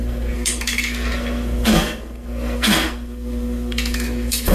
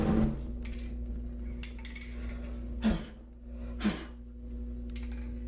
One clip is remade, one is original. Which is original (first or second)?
second